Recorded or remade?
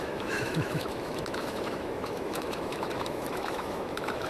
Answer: remade